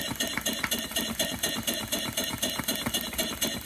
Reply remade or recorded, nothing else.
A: recorded